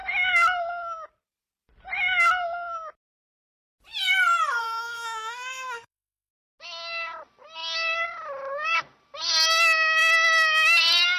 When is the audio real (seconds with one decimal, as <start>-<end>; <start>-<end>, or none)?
0.0-4.6; 6.3-11.2